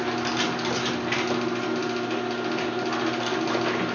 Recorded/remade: recorded